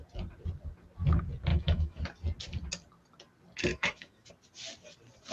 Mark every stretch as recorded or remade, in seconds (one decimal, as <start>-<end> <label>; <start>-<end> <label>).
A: 0.0-1.5 recorded; 1.5-2.0 remade; 2.0-3.7 recorded; 3.7-4.3 remade; 4.3-5.3 recorded